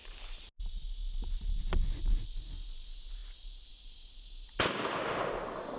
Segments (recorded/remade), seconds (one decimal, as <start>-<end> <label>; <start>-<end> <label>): 0.0-5.8 recorded